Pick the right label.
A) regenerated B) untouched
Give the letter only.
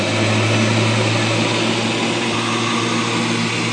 B